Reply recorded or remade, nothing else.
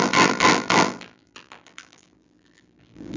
remade